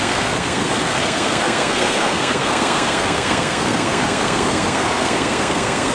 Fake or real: fake